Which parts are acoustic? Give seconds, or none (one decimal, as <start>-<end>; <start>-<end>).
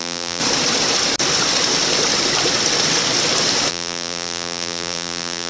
0.4-3.7